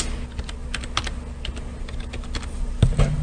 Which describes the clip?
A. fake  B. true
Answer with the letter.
B